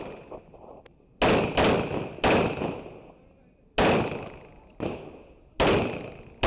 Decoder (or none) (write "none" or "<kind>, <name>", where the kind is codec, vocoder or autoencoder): none